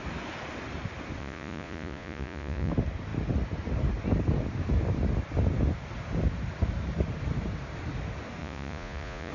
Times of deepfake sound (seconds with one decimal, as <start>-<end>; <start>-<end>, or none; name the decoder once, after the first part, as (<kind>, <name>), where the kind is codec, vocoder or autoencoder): 1.2-2.7 (vocoder, Vocos); 8.4-9.3